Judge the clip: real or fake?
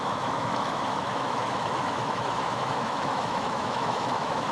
fake